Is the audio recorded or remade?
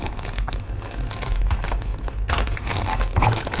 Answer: remade